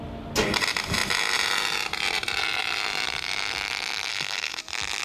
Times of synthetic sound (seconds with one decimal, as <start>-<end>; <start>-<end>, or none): 4.1-4.6